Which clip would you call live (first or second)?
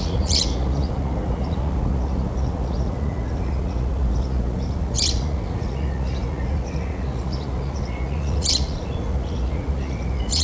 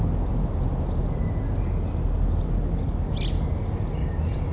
second